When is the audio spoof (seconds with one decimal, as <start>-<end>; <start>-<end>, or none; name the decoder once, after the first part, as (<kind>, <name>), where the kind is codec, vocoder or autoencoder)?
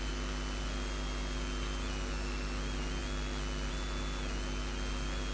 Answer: none